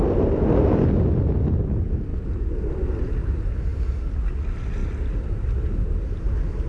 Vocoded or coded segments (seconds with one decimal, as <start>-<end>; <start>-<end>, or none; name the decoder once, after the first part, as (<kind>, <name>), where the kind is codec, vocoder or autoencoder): none